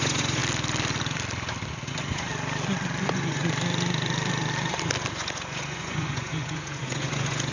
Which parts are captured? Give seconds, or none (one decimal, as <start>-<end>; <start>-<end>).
0.4-1.9; 2.3-3.0; 3.4-5.1